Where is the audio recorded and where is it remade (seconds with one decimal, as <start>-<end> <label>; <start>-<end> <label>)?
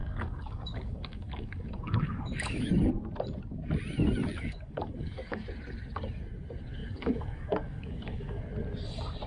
0.0-2.7 remade; 2.7-4.3 recorded; 4.3-5.4 remade; 5.4-6.8 recorded; 6.8-8.4 remade; 8.4-9.3 recorded